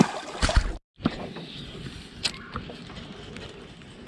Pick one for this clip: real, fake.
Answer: real